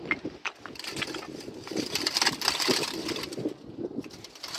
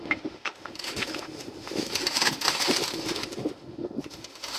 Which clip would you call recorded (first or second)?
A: first